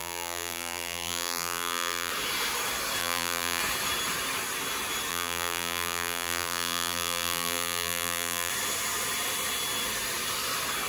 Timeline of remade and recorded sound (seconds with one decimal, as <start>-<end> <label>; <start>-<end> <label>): 0.0-2.1 remade; 2.1-3.0 recorded; 3.0-3.6 remade; 3.6-5.1 recorded; 5.1-8.5 remade; 8.5-10.9 recorded